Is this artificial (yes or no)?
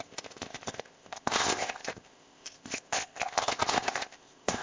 yes